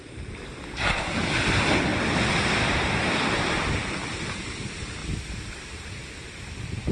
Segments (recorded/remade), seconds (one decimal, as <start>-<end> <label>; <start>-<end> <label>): 0.0-6.9 recorded

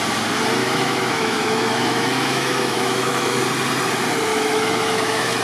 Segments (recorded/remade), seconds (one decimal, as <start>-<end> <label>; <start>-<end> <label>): 0.0-0.6 recorded; 0.6-3.4 remade; 3.4-4.3 recorded; 4.3-5.4 remade

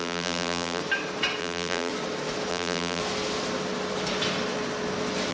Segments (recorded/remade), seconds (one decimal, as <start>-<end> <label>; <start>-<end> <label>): 0.0-0.8 remade; 0.8-1.4 recorded; 1.4-1.9 remade; 1.9-2.5 recorded; 2.5-3.0 remade; 3.0-5.3 recorded

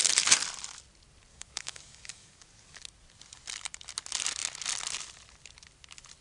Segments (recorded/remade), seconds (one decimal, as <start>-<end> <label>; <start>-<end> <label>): 0.0-1.3 recorded; 1.3-2.8 remade; 2.8-6.2 recorded

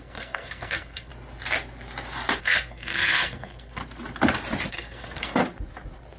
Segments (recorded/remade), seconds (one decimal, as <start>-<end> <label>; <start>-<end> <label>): 0.0-1.1 remade; 1.1-2.4 recorded; 2.4-3.8 remade; 3.8-4.7 recorded; 4.7-5.4 remade; 5.4-6.2 recorded

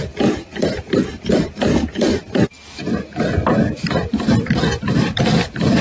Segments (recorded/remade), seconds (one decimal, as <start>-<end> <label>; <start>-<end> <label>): 0.0-2.1 recorded; 2.1-5.8 remade

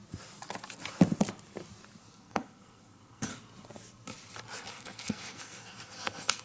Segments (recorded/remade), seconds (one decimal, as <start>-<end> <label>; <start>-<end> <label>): 0.0-2.0 recorded; 2.0-3.3 remade; 3.3-4.7 recorded; 4.7-6.4 remade

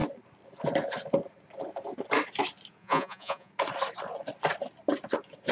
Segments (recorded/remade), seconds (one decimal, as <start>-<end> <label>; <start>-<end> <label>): 0.0-2.8 recorded; 2.8-3.5 remade; 3.5-5.5 recorded